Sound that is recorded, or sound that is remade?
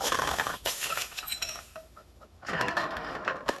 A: remade